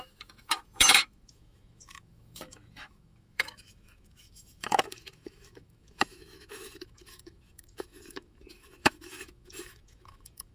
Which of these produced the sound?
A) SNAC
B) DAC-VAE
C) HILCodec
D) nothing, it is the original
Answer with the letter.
B